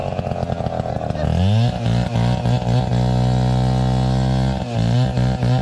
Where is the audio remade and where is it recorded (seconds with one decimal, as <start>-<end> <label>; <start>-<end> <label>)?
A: 0.0-5.6 recorded